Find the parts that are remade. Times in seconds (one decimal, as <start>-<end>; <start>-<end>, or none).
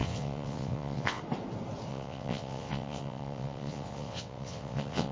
0.0-1.2; 1.9-5.1